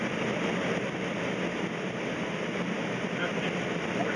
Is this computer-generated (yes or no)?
no